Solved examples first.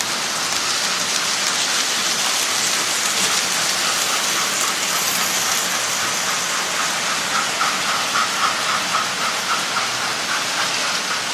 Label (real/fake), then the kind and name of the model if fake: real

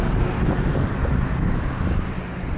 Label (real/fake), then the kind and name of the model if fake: real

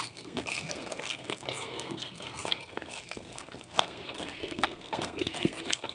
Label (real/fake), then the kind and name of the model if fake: fake, codec, SNAC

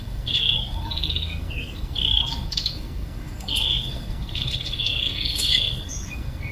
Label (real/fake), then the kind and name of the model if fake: fake, codec, SNAC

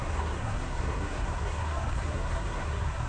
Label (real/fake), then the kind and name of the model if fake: fake, codec, SNAC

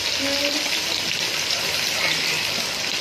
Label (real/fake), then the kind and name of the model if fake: real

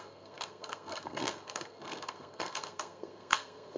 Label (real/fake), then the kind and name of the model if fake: fake, codec, SNAC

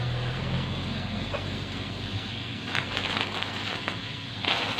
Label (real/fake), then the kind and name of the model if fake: fake, codec, SNAC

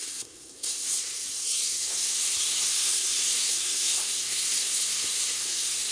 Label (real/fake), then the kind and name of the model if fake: fake, codec, SNAC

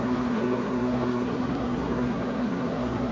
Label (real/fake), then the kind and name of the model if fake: fake, codec, SNAC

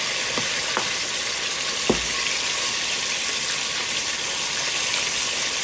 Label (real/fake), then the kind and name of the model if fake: real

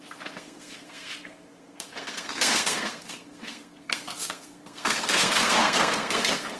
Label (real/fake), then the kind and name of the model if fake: fake, codec, SNAC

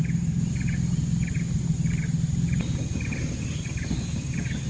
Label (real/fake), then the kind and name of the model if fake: real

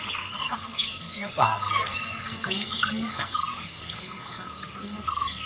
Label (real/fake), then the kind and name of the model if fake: fake, codec, SNAC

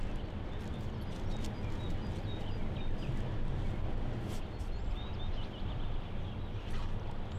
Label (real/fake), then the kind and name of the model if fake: real